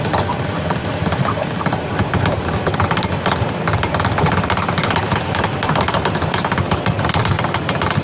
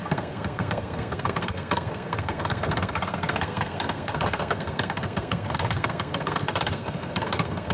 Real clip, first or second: first